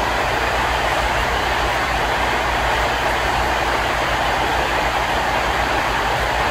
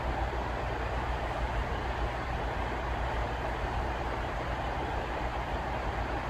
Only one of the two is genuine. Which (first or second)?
first